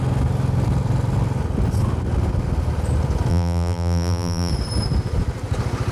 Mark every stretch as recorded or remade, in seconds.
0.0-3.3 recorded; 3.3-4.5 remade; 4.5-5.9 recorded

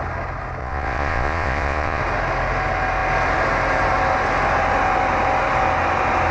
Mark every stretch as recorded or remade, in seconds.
0.0-0.6 recorded; 0.6-2.0 remade; 2.0-6.3 recorded

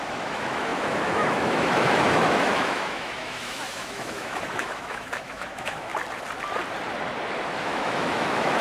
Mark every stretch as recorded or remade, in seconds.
0.0-5.9 remade; 5.9-7.6 recorded; 7.6-8.6 remade

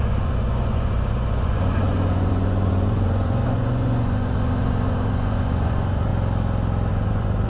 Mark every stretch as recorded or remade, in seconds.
0.0-6.1 remade; 6.1-6.9 recorded; 6.9-7.5 remade

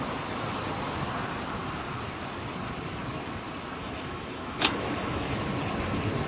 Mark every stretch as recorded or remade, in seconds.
0.0-3.8 recorded; 3.8-5.4 remade; 5.4-6.3 recorded